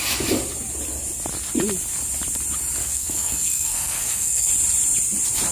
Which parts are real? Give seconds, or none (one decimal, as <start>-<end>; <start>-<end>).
0.0-2.8; 4.5-5.5